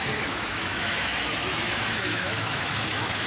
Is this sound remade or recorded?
remade